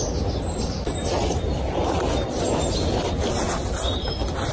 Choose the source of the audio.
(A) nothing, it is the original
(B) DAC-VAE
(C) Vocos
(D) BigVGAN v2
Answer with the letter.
A